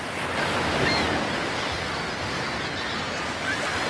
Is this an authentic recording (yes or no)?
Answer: yes